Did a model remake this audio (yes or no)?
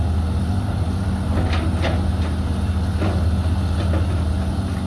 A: no